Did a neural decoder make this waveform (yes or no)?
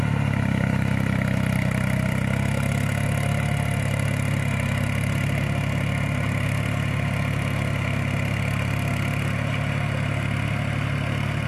no